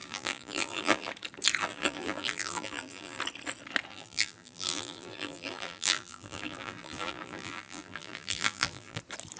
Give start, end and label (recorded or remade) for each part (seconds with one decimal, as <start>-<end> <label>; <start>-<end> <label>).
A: 0.0-1.1 remade; 1.1-1.6 recorded; 1.6-3.2 remade; 3.2-3.9 recorded; 3.9-9.0 remade; 9.0-9.4 recorded